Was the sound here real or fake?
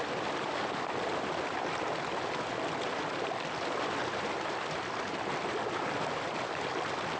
real